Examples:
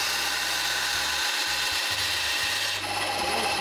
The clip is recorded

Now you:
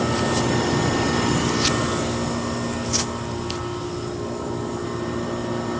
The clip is recorded